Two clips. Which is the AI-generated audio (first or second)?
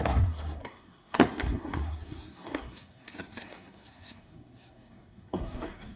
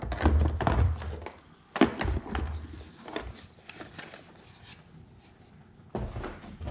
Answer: first